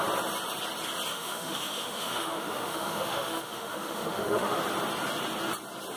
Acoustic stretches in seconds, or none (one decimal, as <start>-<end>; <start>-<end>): 0.0-1.1; 4.6-6.0